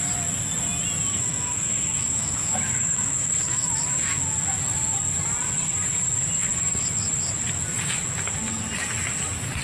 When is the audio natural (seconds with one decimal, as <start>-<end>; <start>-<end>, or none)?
0.0-1.3; 3.7-9.6